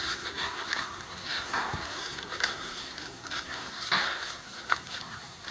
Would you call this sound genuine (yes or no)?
no